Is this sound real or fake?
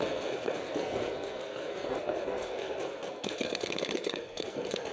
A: fake